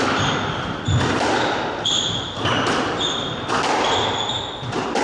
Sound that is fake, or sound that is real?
real